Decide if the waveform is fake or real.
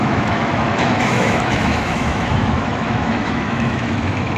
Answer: fake